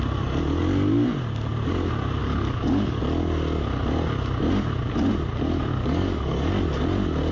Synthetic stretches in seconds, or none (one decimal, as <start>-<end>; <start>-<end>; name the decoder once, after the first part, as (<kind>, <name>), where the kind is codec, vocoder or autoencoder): 2.2-3.0 (codec, DAC); 5.7-6.5

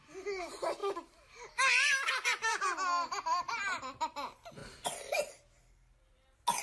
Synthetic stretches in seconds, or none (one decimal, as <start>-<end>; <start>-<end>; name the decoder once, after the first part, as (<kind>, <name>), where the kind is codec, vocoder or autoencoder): none

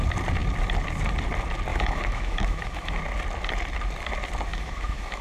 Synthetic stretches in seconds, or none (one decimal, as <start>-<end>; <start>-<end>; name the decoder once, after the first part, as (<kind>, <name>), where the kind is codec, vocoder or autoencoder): 1.7-3.0 (autoencoder, DAC-VAE); 4.5-5.2

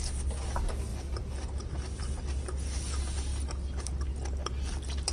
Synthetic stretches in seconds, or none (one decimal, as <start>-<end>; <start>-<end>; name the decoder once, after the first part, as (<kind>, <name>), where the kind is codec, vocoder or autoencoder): none

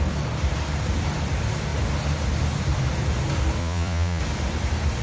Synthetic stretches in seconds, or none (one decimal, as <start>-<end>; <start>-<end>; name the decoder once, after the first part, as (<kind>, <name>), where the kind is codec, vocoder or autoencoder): 3.6-4.2 (vocoder, Vocos)

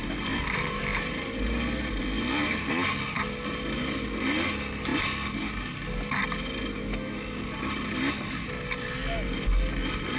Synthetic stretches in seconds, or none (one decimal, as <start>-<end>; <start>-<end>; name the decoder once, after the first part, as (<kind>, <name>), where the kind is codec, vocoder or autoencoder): none

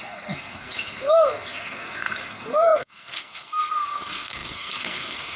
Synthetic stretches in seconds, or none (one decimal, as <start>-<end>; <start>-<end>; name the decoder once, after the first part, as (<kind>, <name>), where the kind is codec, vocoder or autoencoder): 0.0-5.4 (codec, SNAC)